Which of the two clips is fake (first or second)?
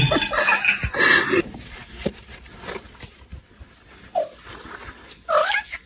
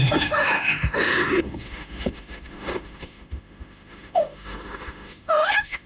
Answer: second